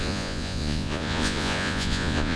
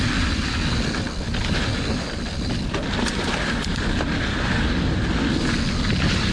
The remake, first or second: first